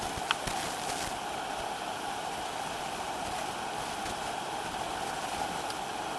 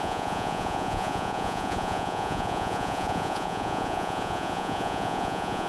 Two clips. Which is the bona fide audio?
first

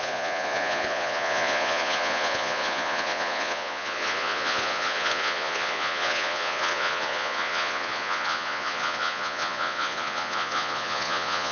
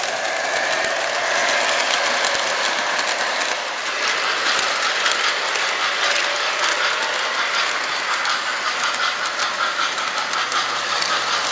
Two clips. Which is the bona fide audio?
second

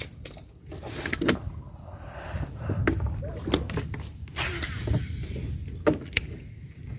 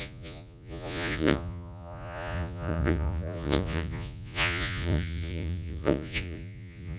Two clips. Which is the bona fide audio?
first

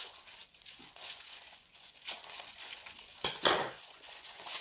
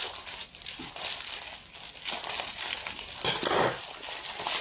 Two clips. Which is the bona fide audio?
second